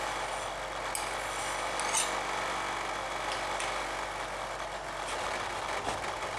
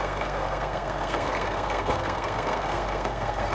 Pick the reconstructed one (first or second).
second